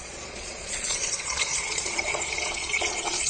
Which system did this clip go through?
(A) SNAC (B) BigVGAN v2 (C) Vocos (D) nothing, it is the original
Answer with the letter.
C